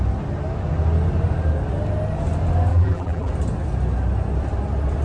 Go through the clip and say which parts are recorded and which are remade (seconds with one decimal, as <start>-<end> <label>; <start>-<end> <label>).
0.0-2.7 recorded; 2.7-3.3 remade; 3.3-5.0 recorded